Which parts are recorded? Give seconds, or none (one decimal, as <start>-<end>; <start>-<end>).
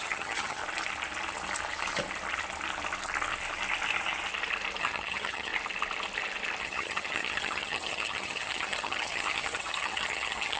0.6-4.8; 5.5-6.6